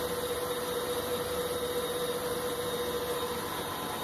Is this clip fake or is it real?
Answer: real